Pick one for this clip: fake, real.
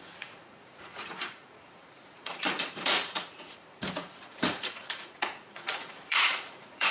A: fake